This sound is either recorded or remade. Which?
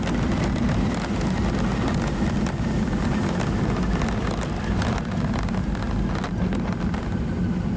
recorded